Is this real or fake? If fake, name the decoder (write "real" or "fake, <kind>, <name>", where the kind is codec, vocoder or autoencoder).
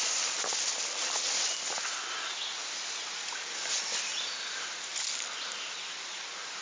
real